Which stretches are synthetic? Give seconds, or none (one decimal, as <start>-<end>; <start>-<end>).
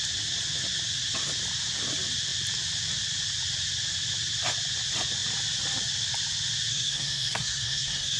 6.7-8.2